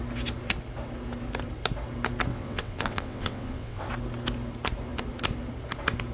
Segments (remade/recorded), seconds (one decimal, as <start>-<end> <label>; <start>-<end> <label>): 0.0-2.3 recorded; 2.3-3.9 remade; 3.9-6.1 recorded

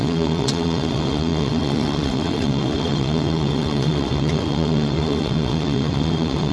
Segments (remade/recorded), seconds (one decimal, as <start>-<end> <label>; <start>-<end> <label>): 0.0-6.5 remade

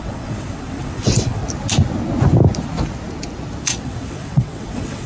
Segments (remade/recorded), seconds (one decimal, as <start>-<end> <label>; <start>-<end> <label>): 0.0-1.4 remade; 1.4-3.6 recorded; 3.6-5.1 remade

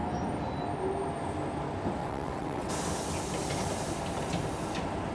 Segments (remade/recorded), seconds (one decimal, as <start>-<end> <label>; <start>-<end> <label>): 0.0-2.0 recorded; 2.0-2.7 remade; 2.7-5.1 recorded

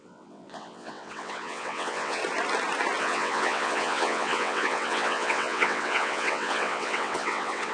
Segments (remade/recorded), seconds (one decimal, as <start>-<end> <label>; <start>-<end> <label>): 0.0-2.2 remade; 2.2-3.0 recorded; 3.0-7.7 remade

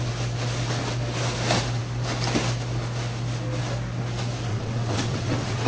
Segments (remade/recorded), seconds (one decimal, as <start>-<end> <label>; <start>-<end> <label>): 0.0-4.5 recorded; 4.5-5.7 remade

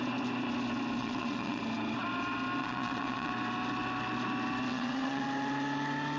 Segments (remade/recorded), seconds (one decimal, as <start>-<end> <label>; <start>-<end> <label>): 0.0-1.0 recorded; 1.0-1.6 remade; 1.6-2.6 recorded; 2.6-3.3 remade; 3.3-4.7 recorded; 4.7-5.2 remade; 5.2-6.2 recorded